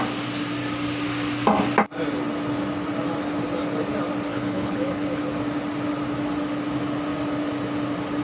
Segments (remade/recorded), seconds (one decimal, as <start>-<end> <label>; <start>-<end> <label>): 0.0-4.3 recorded; 4.3-5.2 remade; 5.2-8.2 recorded